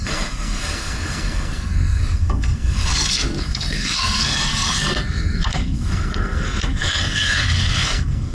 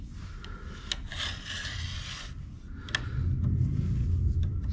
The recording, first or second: second